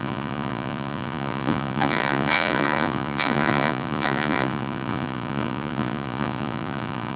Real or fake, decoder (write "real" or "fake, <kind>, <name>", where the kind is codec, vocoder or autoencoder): fake, vocoder, Vocos